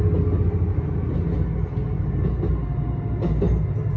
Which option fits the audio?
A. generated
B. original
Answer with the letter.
B